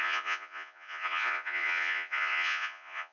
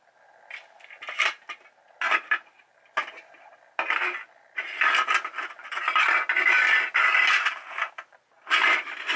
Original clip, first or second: second